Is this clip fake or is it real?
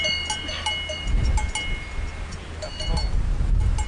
real